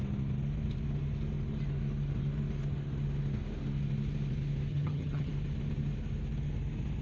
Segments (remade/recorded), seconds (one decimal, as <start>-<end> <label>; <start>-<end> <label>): 0.0-4.7 recorded; 4.7-5.3 remade; 5.3-7.0 recorded